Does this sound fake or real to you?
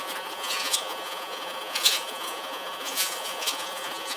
fake